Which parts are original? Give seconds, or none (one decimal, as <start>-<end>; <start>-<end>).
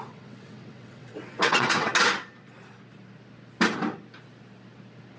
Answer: 1.9-5.2